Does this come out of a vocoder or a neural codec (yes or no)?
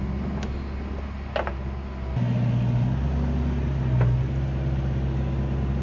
no